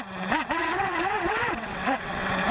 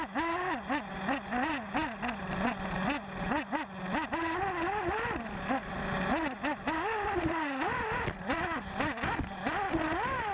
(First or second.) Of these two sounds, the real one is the second